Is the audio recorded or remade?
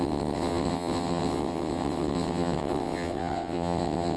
remade